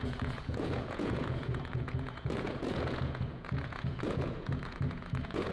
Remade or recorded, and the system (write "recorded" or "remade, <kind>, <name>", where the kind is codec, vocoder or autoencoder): remade, vocoder, Vocos